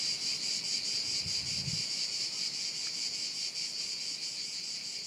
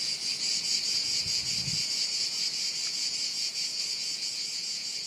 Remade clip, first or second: second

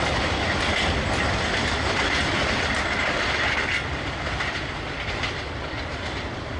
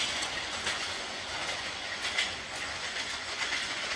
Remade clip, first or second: second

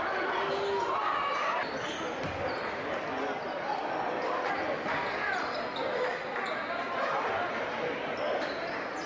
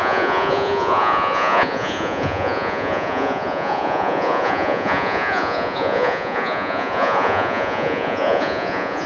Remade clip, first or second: second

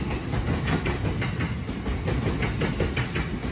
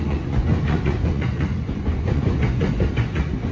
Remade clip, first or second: second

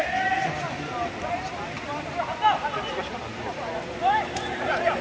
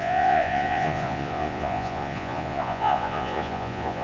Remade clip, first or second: second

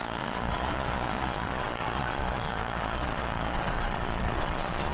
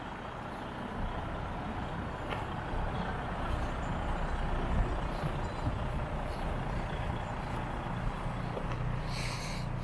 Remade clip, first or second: first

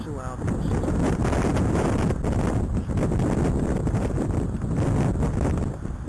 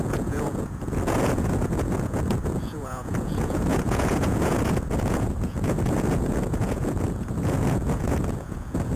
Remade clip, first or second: second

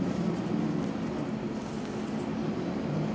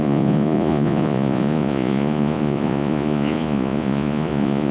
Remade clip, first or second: second